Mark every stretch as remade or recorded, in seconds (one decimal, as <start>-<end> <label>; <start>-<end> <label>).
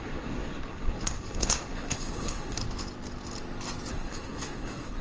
0.0-2.6 remade; 2.6-3.9 recorded; 3.9-5.0 remade